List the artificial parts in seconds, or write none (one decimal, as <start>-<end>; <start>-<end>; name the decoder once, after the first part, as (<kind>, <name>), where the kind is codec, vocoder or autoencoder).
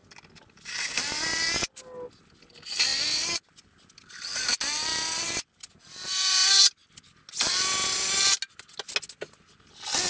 4.9-5.8 (vocoder, BigVGAN v2)